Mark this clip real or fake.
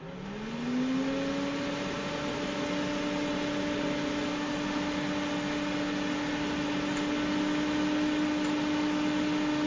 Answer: real